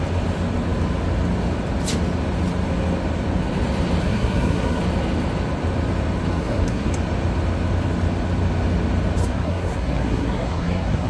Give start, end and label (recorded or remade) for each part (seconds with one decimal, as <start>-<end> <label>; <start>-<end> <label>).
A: 0.0-4.0 recorded; 4.0-4.8 remade; 4.8-6.3 recorded; 6.3-6.9 remade; 6.9-9.2 recorded; 9.2-11.1 remade